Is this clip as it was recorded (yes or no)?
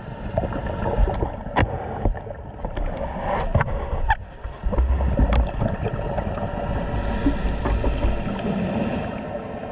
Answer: yes